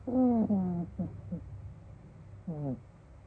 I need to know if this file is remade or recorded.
recorded